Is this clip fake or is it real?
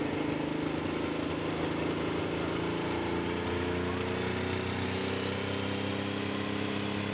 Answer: real